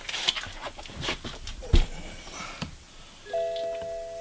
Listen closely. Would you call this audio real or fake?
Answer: real